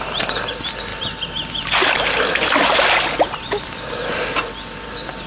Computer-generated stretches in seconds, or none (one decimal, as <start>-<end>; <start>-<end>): 0.0-5.3